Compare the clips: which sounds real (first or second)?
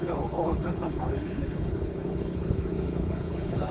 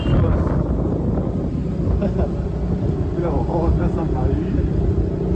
second